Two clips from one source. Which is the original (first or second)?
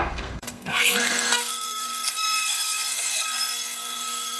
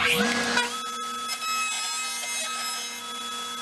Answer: second